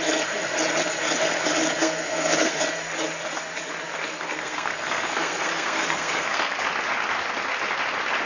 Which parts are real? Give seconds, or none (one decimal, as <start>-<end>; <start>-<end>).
0.0-1.8; 2.6-4.1; 6.6-8.3